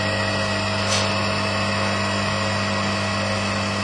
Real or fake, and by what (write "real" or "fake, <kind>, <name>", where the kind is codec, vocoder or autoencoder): real